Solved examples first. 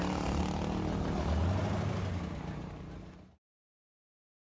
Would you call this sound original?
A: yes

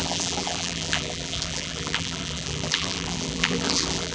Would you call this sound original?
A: no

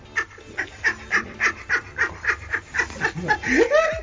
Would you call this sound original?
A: yes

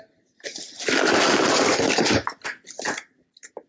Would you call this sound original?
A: yes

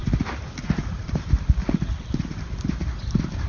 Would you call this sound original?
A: yes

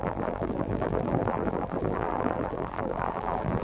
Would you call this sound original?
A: no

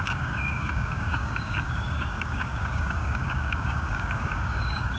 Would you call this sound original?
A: no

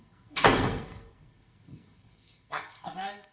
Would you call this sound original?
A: no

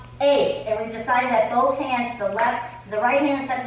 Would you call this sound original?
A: yes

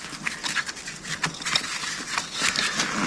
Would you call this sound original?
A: yes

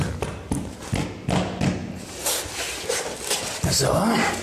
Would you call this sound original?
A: yes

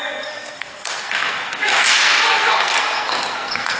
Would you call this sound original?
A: no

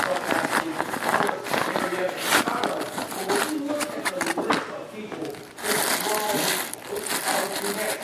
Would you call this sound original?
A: yes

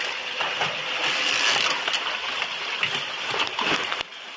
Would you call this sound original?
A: yes